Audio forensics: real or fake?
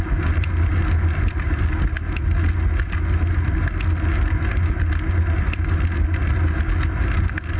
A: real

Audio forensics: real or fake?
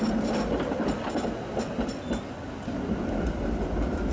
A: real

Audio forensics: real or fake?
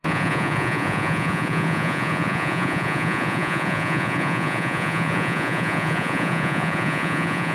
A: fake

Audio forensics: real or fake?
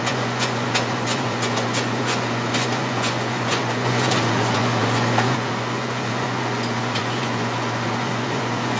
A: fake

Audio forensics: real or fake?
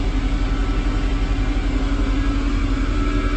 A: real